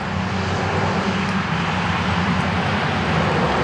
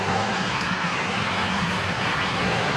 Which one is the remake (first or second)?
second